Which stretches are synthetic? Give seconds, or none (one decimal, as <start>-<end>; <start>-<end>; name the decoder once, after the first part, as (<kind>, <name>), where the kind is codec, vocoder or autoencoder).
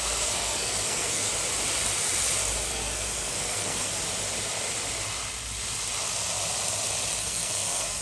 0.0-1.3 (codec, SNAC); 2.7-4.0; 7.2-8.0